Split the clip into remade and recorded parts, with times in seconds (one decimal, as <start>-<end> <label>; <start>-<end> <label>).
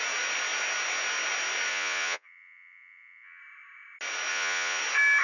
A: 0.0-1.7 recorded; 1.7-3.4 remade; 3.4-4.3 recorded; 4.3-4.8 remade; 4.8-5.2 recorded